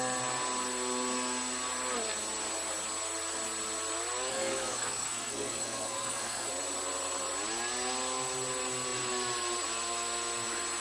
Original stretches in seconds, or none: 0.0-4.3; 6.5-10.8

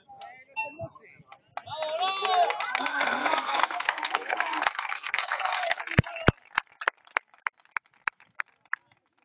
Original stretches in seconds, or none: 0.0-2.9; 5.8-9.2

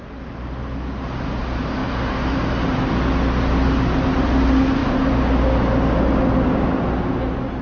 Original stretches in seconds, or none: 0.0-7.6